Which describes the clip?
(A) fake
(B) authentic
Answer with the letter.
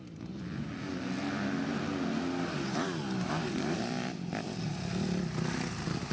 B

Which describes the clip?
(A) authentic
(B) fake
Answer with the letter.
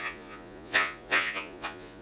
B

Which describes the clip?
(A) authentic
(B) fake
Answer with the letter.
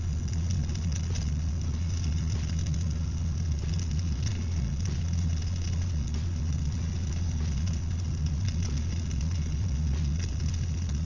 B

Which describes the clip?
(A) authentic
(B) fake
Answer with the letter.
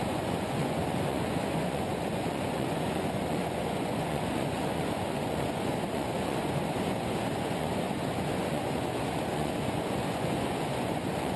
B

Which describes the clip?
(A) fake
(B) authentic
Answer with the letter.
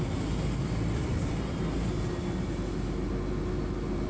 B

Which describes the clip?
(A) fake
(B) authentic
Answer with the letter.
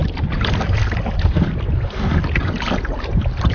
B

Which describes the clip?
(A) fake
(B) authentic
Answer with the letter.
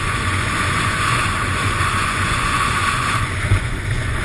A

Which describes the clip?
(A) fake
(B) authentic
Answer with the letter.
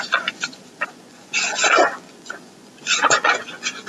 A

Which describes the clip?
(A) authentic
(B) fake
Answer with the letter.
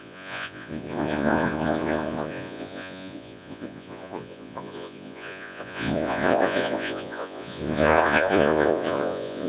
B